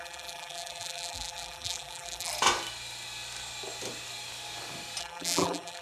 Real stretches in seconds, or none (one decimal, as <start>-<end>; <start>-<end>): 2.3-5.0